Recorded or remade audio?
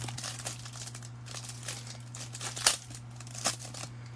recorded